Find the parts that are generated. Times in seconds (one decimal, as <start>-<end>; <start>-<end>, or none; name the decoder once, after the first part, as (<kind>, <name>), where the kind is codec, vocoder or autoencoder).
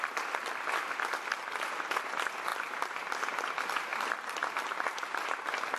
2.5-3.3 (vocoder, BigVGAN v2); 3.9-4.7